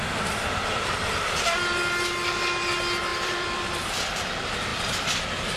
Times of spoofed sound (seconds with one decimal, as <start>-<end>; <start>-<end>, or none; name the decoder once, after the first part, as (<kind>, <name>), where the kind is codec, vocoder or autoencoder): 3.1-4.3 (vocoder, BigVGAN v2); 4.7-5.6